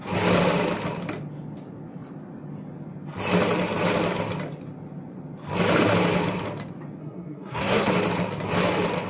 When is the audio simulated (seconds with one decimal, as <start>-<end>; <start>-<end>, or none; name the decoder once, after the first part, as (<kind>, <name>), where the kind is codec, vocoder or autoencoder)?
7.0-7.9 (codec, SNAC)